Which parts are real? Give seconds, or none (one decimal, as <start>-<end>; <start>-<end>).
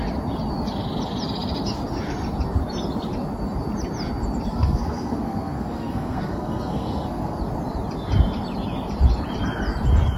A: 0.0-4.5; 7.4-10.2